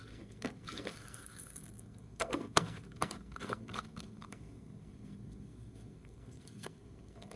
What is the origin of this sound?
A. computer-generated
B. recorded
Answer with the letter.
A